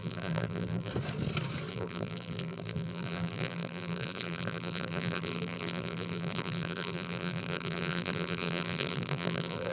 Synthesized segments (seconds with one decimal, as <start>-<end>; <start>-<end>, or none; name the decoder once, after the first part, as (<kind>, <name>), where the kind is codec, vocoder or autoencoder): 0.0-0.9 (vocoder, BigVGAN v2); 1.7-9.7